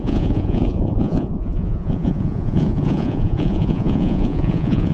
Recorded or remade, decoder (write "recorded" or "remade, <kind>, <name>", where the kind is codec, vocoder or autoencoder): remade, vocoder, Vocos